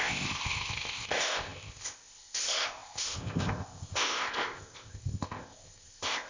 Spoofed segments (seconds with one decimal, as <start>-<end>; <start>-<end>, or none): 0.0-6.3